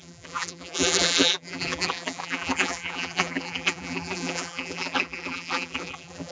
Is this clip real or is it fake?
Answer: fake